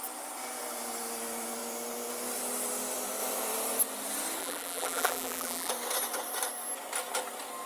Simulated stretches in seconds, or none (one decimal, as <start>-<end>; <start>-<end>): 4.4-5.7